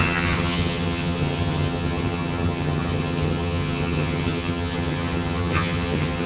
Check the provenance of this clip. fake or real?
fake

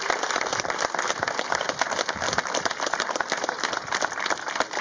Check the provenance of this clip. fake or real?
real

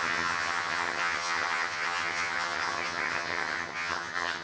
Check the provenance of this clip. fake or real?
fake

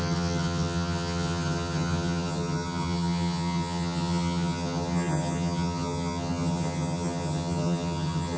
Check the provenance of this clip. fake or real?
fake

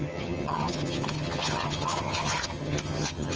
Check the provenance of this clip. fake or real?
fake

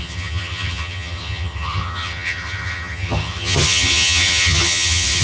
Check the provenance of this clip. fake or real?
fake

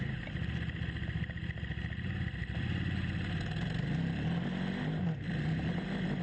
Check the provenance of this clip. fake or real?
real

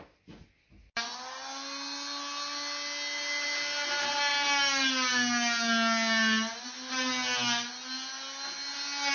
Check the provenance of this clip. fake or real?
real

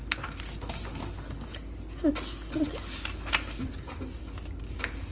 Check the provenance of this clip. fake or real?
real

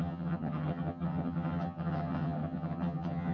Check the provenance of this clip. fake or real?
fake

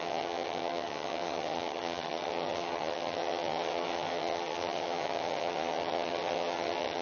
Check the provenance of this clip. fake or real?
fake